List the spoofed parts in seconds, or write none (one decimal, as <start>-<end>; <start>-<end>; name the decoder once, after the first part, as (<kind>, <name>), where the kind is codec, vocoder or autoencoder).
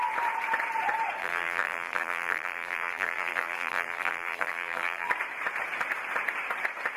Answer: 1.2-5.1 (vocoder, BigVGAN v2)